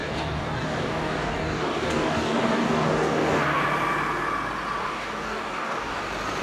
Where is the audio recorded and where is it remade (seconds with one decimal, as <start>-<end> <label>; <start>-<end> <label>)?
0.0-3.6 remade; 3.6-4.8 recorded; 4.8-6.0 remade; 6.0-6.4 recorded